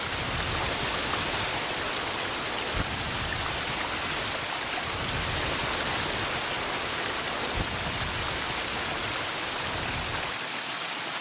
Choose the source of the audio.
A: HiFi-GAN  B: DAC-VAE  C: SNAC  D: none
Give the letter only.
D